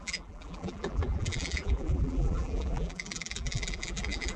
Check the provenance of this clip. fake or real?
fake